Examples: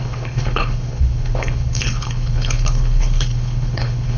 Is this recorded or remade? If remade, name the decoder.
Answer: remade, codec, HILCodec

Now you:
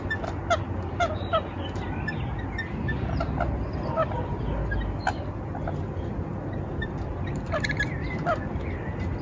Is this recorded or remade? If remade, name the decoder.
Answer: recorded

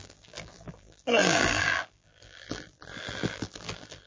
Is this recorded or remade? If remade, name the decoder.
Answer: remade, vocoder, BigVGAN v2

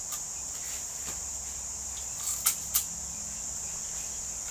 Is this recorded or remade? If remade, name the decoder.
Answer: recorded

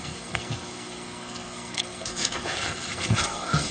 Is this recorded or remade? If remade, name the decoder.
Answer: remade, codec, SNAC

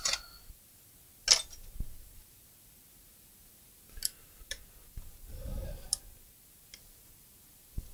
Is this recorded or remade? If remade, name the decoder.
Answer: recorded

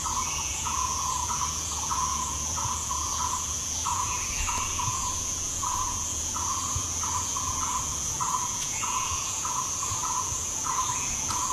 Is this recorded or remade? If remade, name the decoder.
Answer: remade, vocoder, Vocos